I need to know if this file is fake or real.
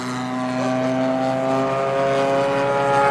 real